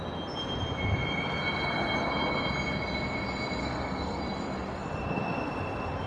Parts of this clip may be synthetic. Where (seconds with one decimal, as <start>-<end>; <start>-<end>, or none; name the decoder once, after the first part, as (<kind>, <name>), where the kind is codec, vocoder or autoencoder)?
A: 3.6-4.2 (codec, SNAC)